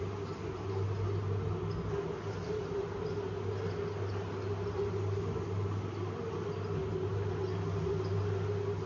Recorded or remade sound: recorded